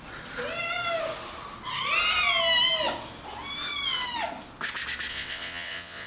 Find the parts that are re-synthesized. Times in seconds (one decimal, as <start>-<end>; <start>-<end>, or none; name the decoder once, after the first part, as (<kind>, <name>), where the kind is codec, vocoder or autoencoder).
5.1-6.1 (vocoder, WaveNeXt)